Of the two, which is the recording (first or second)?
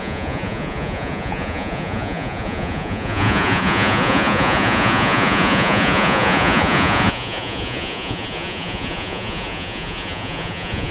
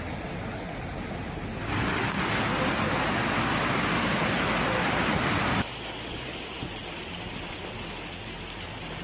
second